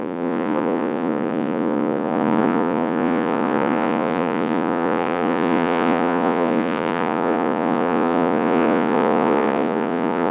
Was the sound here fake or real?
fake